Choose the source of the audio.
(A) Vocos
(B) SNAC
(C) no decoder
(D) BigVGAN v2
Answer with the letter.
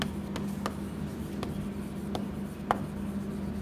C